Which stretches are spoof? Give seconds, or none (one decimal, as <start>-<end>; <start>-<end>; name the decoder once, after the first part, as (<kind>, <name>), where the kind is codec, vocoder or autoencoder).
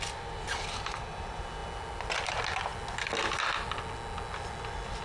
none